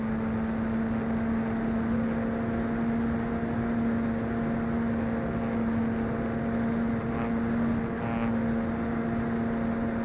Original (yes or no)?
yes